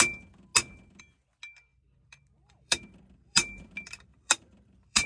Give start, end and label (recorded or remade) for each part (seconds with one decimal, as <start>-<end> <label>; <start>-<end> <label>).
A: 0.0-1.7 recorded; 1.7-5.1 remade